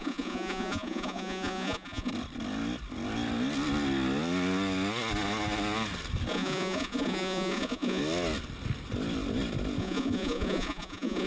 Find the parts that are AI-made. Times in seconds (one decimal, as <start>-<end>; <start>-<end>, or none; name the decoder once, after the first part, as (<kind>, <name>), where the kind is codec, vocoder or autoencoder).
0.0-2.1 (vocoder, Vocos); 6.3-8.0; 9.8-11.3